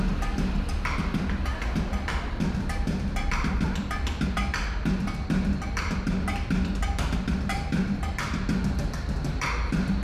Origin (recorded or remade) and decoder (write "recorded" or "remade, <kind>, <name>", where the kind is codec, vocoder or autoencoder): recorded